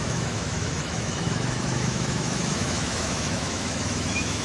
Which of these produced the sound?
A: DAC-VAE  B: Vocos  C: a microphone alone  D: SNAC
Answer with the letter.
A